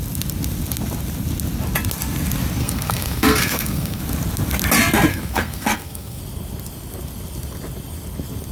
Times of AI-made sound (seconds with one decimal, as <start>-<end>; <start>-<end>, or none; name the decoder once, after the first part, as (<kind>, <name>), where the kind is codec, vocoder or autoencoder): 2.6-4.0 (codec, SNAC); 5.1-6.2